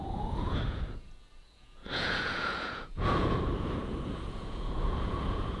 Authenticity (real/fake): fake